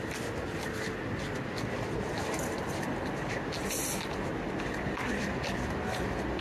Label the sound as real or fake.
real